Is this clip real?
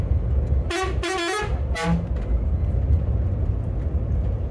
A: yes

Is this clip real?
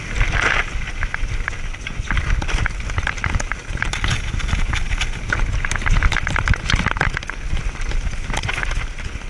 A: yes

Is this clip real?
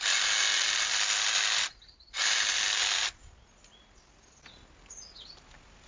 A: yes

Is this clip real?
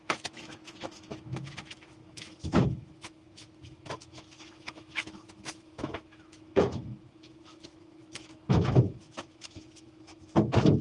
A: no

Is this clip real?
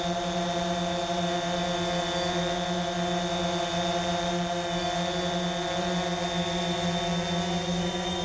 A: yes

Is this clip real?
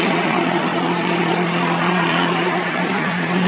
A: no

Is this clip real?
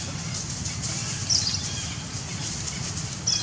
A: yes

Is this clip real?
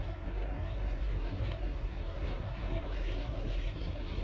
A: no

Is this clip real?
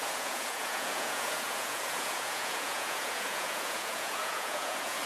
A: no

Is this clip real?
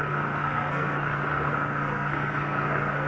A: no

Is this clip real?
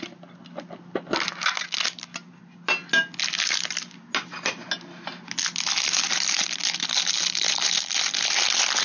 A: yes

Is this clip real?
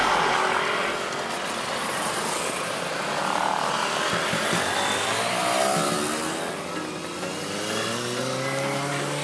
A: yes